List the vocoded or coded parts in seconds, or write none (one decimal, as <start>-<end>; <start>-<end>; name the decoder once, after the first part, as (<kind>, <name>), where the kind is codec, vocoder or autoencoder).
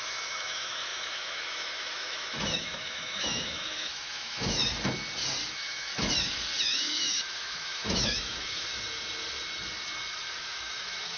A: 0.0-4.6 (autoencoder, DAC-VAE); 5.5-5.9; 6.6-8.7; 10.4-11.2